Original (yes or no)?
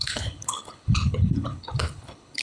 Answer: no